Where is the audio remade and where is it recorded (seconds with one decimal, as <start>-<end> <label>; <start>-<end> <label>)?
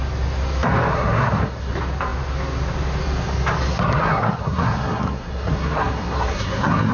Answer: 0.0-0.9 recorded; 0.9-1.7 remade; 1.7-3.7 recorded; 3.7-6.9 remade